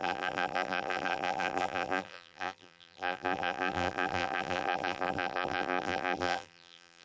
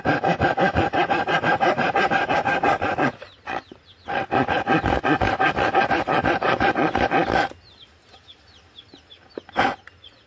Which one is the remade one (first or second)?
first